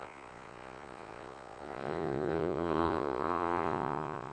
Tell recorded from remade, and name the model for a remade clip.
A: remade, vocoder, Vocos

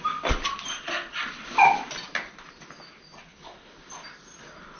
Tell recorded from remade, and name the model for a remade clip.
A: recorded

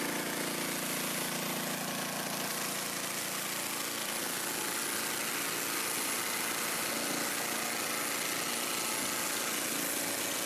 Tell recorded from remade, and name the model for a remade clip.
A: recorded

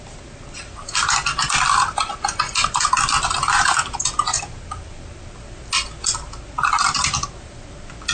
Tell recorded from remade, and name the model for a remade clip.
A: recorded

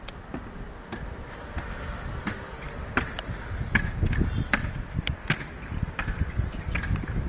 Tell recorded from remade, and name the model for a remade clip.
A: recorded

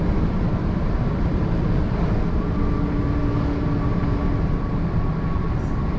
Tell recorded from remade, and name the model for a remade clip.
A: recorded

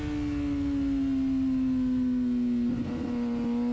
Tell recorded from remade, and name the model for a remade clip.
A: recorded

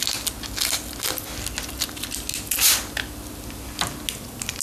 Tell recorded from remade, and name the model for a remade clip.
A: recorded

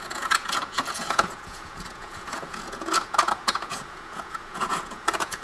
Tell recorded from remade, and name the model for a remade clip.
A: remade, vocoder, Vocos